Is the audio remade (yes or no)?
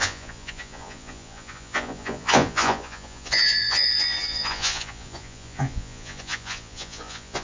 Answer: yes